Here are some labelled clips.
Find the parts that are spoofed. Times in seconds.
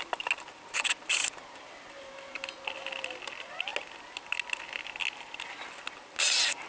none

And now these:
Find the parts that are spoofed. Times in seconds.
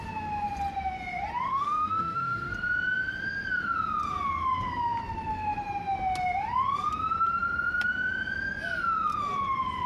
1.5-2.5 (autoencoder, DAC-VAE)